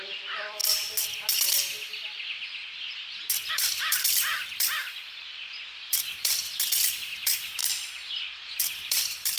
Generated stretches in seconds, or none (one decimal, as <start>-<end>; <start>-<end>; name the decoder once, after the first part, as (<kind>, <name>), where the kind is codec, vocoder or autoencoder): 0.0-0.6 (vocoder, BigVGAN v2); 3.5-6.4; 6.9-7.6; 8.1-9.4